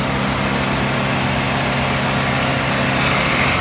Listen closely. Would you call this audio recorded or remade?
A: recorded